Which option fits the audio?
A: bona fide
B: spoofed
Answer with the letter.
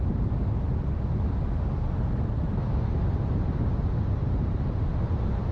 A